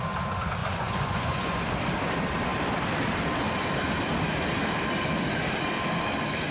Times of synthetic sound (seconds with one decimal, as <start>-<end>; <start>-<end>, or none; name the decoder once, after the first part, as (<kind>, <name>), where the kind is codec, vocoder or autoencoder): 0.6-1.6 (vocoder, Vocos)